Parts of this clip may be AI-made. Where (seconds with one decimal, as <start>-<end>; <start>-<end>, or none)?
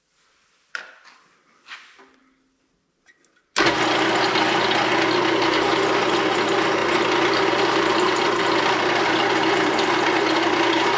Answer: 0.0-2.2; 6.3-11.0